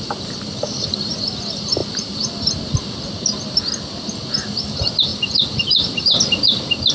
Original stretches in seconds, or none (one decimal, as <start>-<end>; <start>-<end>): 0.0-6.9